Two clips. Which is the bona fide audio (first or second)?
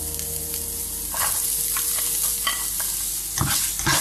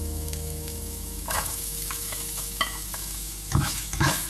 first